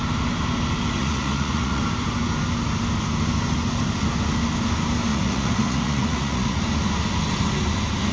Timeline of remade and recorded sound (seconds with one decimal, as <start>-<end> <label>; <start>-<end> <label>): 0.0-1.0 recorded; 1.0-1.8 remade; 1.8-5.1 recorded; 5.1-6.6 remade; 6.6-8.1 recorded